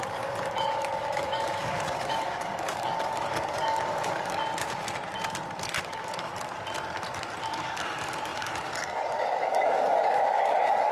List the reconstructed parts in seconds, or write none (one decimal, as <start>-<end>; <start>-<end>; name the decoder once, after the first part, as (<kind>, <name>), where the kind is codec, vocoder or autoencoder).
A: 0.0-4.4 (codec, DAC); 5.8-6.3; 7.5-10.9